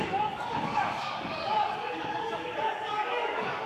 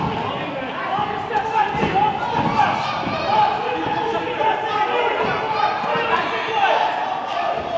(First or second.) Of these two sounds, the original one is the second